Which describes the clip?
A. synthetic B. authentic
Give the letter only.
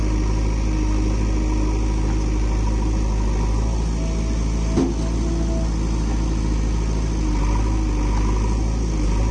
B